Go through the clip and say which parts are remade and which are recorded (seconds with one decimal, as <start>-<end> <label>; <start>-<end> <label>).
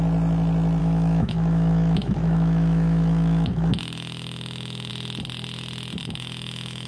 0.0-0.8 recorded; 0.8-4.9 remade; 4.9-6.0 recorded; 6.0-6.9 remade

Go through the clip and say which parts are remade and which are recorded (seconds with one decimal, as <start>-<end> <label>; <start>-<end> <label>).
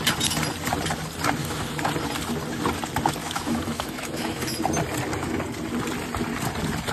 0.0-1.4 recorded; 1.4-1.9 remade; 1.9-3.2 recorded; 3.2-4.6 remade; 4.6-6.9 recorded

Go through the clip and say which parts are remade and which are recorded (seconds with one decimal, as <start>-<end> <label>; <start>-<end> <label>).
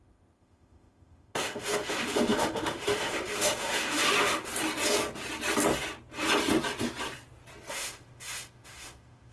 0.0-4.5 remade; 4.5-7.7 recorded; 7.7-9.3 remade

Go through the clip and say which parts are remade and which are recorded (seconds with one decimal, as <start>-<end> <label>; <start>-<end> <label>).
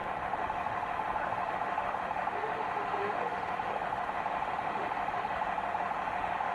0.0-6.5 remade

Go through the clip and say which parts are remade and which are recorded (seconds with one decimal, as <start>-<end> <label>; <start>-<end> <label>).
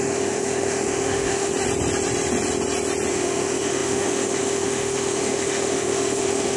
0.0-1.5 remade; 1.5-3.1 recorded; 3.1-6.6 remade